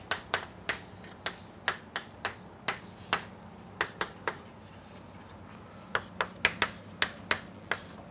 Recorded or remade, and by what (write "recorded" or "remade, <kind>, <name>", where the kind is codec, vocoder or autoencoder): recorded